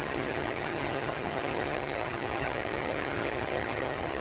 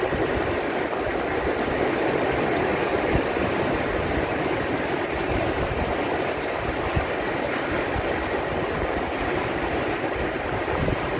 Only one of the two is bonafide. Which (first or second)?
second